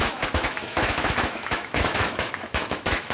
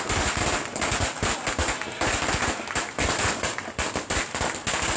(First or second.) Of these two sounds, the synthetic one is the first